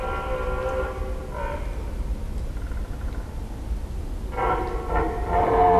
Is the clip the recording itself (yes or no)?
yes